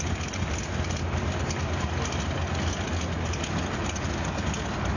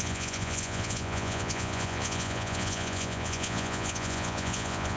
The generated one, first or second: second